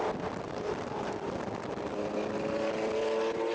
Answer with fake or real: real